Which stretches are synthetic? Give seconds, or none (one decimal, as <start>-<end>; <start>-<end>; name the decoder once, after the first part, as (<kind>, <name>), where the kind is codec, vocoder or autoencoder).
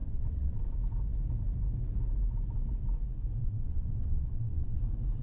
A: 0.0-0.6 (vocoder, WaveNeXt); 3.4-4.8